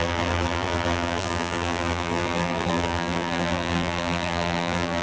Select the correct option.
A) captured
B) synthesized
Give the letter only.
B